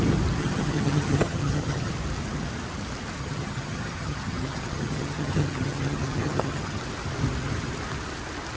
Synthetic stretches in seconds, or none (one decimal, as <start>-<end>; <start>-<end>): 0.4-1.9; 3.2-6.8